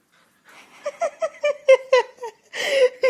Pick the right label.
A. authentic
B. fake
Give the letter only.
A